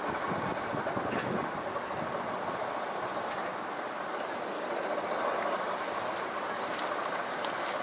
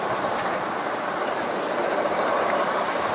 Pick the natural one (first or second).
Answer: first